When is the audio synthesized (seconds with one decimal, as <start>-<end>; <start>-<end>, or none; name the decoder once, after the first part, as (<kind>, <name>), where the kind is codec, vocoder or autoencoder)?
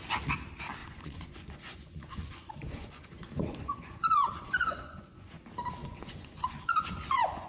0.8-5.3 (vocoder, Vocos); 5.8-7.5